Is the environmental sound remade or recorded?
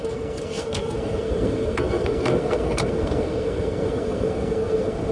remade